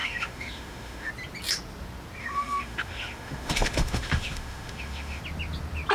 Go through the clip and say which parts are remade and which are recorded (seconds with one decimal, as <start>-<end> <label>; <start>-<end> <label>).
0.0-1.1 remade; 1.1-2.2 recorded; 2.2-5.2 remade; 5.2-5.9 recorded